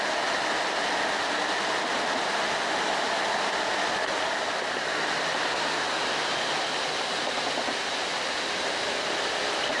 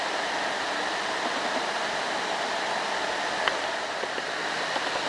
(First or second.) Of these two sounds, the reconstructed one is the second